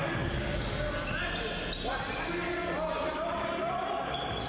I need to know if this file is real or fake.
real